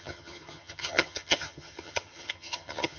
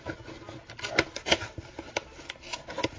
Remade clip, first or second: first